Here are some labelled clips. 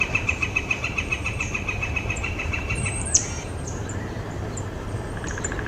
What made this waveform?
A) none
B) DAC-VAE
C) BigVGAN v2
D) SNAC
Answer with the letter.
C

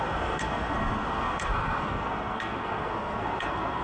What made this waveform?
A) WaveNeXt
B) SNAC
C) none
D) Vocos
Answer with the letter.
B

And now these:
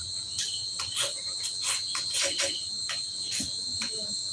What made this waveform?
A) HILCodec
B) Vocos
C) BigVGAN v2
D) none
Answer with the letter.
D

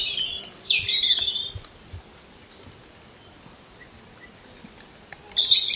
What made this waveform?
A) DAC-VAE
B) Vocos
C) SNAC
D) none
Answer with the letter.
D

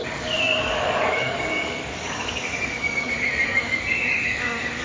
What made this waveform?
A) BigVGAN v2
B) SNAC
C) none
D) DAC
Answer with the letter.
D